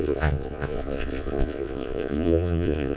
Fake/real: fake